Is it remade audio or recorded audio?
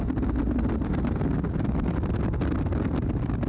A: recorded